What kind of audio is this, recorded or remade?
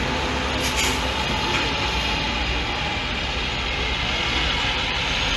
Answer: recorded